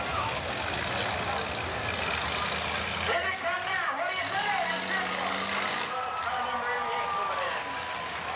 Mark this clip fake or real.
real